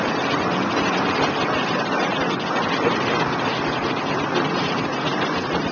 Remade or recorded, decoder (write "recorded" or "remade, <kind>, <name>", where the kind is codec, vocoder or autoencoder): remade, vocoder, BigVGAN v2